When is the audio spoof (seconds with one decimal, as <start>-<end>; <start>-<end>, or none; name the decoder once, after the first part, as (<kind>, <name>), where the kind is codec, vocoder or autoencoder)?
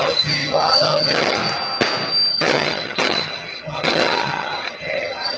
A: 0.0-1.4 (vocoder, HiFi-GAN); 2.3-5.4